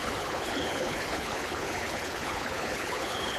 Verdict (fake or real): fake